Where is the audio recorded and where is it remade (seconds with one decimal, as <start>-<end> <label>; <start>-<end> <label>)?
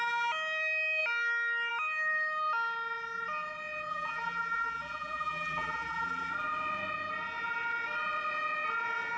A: 0.0-3.9 recorded; 3.9-6.3 remade; 6.3-9.2 recorded